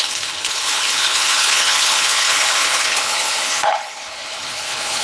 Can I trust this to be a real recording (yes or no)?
no